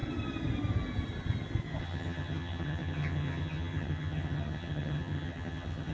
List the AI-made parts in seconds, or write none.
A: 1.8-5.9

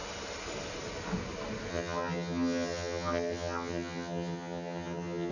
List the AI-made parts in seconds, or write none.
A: 1.7-5.3